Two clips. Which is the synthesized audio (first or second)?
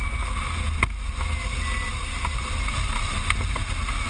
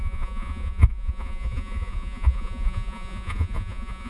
second